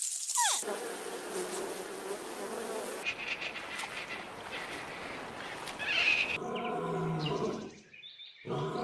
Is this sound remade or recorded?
recorded